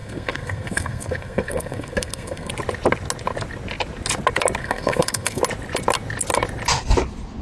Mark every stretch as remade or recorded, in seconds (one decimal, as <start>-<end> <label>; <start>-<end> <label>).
0.0-2.5 remade; 2.5-4.6 recorded; 4.6-5.4 remade; 5.4-7.4 recorded